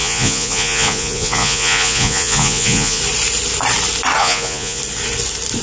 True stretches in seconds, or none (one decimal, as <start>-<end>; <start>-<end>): 3.0-4.2; 4.8-5.6